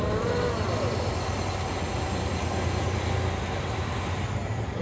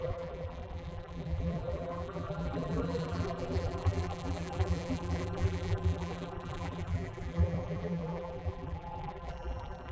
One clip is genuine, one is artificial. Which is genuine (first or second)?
first